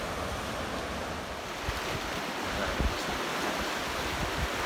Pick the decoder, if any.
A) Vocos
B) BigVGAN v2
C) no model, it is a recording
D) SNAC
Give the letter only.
C